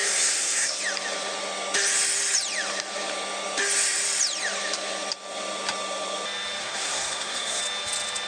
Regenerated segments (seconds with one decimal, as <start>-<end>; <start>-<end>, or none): 0.0-0.8; 6.6-7.6